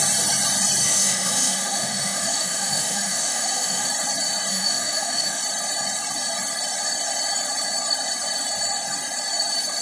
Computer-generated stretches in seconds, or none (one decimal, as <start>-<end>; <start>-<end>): 0.8-3.9; 4.5-5.4